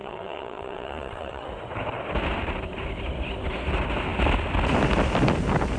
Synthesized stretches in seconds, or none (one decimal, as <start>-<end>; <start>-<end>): 0.0-1.5